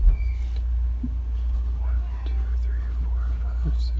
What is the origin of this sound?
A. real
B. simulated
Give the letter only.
A